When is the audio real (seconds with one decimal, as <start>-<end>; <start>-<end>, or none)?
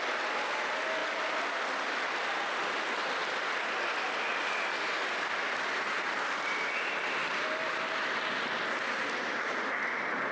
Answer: 0.0-4.9; 8.4-10.3